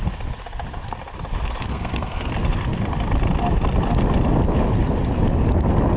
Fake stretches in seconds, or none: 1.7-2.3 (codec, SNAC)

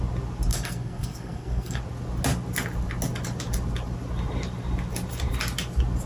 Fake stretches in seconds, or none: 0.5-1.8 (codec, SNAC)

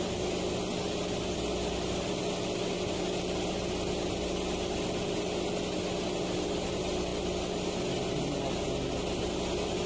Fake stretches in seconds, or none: none

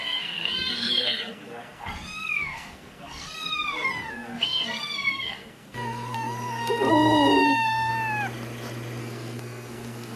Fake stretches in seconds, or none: 0.0-7.9 (codec, SNAC); 9.0-10.2